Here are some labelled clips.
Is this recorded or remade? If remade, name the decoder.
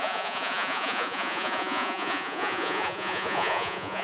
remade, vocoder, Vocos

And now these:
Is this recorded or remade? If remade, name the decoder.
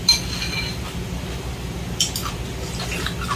recorded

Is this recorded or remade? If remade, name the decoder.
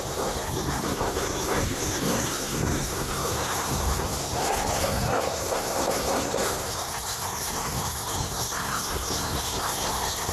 remade, codec, SNAC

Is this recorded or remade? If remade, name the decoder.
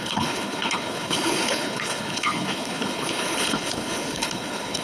remade, codec, HILCodec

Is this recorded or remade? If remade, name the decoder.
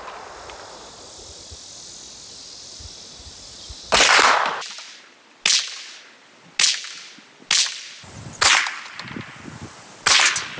recorded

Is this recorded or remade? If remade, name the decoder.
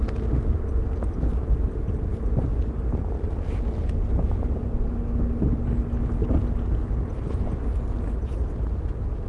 recorded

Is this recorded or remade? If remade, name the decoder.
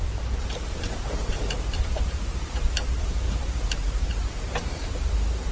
remade, vocoder, BigVGAN v2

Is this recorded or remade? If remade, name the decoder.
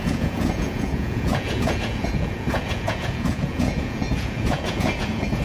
remade, vocoder, Vocos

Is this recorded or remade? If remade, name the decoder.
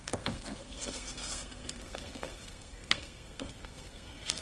remade, codec, SNAC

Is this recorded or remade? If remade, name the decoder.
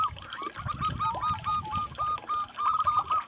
recorded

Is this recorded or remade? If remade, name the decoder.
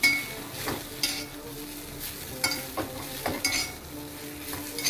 recorded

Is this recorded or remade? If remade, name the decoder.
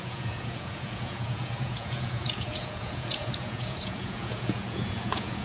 remade, vocoder, Vocos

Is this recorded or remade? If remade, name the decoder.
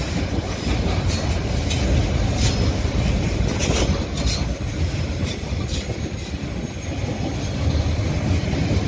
recorded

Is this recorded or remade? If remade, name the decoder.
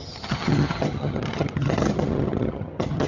remade, vocoder, HiFi-GAN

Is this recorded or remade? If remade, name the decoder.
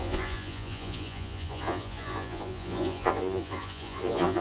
remade, vocoder, Vocos